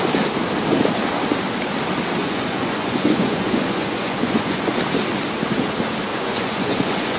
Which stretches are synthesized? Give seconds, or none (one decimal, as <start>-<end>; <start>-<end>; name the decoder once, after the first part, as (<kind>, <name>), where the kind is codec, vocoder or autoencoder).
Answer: 2.2-4.7 (vocoder, Vocos); 6.1-7.2